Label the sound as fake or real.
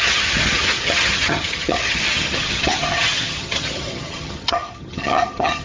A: fake